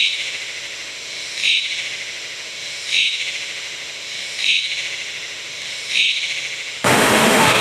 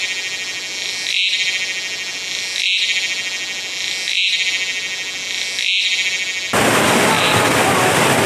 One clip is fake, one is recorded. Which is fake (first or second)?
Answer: first